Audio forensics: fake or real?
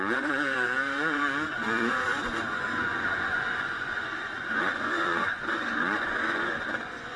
fake